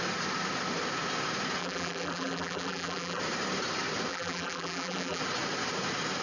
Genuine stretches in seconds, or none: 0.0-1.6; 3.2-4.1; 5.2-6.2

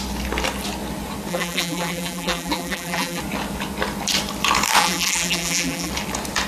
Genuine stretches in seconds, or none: 0.0-1.3; 3.2-4.8; 5.9-6.5